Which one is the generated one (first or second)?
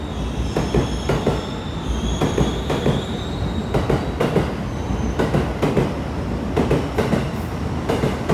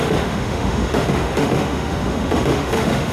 second